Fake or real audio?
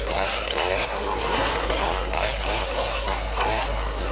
fake